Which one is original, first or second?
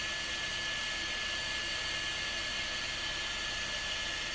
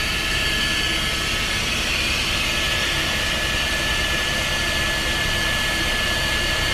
first